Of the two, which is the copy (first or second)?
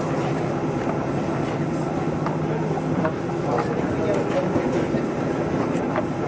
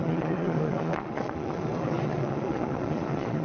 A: second